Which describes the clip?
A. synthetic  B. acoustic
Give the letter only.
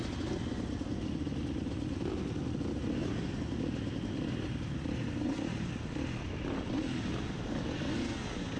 B